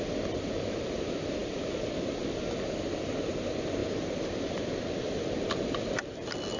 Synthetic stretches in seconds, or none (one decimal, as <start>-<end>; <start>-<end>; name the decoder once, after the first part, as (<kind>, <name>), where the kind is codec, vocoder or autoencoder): none